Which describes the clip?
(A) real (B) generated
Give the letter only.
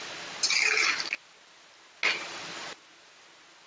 A